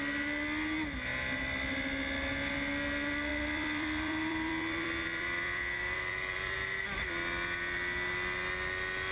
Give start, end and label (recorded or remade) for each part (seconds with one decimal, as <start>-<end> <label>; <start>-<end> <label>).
0.0-3.3 recorded; 3.3-7.1 remade; 7.1-9.1 recorded